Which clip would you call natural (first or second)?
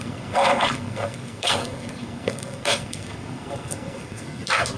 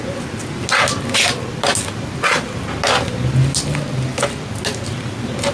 second